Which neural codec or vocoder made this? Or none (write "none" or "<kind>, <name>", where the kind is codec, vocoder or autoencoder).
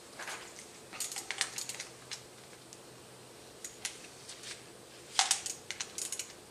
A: none